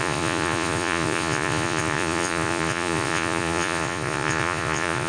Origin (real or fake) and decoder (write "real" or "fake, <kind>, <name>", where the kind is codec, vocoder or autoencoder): fake, vocoder, Vocos